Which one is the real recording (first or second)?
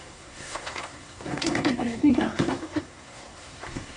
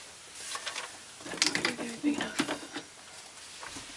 second